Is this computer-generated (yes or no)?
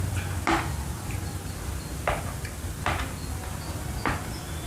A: no